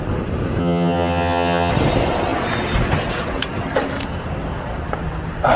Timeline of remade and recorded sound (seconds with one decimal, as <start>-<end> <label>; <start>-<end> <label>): 0.0-0.6 recorded; 0.6-1.7 remade; 1.7-5.6 recorded